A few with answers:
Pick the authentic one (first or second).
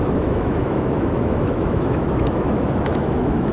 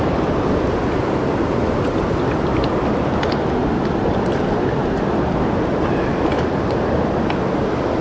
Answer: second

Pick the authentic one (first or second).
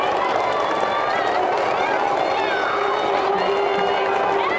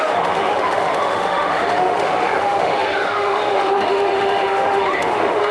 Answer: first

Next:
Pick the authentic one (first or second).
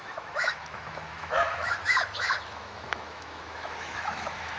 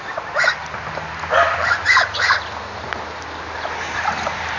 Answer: second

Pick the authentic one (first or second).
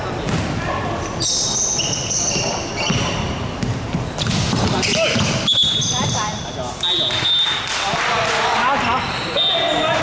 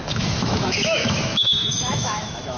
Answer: first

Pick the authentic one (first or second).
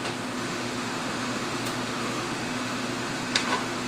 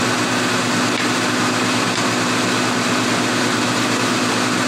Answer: second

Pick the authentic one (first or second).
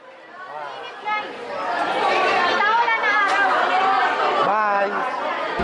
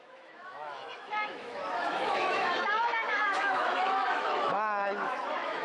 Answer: first